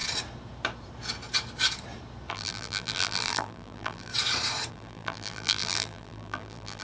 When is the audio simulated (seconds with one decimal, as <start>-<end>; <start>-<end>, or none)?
2.3-4.1; 4.7-6.8